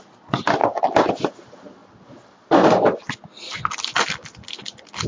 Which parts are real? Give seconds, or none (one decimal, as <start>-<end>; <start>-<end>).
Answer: 0.0-5.1